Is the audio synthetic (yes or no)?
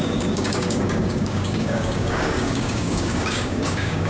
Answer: yes